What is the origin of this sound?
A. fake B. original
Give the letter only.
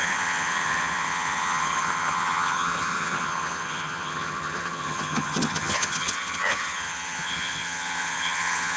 A